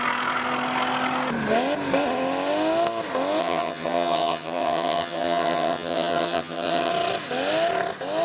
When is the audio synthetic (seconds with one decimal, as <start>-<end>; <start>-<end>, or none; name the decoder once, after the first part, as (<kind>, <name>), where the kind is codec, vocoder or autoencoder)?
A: 3.4-6.9 (vocoder, HiFi-GAN)